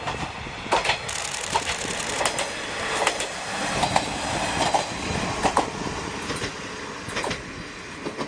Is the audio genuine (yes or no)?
yes